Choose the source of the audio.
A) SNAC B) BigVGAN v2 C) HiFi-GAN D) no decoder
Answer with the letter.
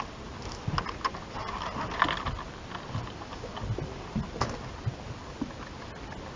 D